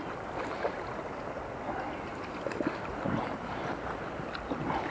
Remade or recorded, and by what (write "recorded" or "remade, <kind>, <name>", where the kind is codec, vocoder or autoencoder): recorded